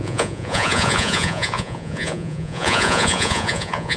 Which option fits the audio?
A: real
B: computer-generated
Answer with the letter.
B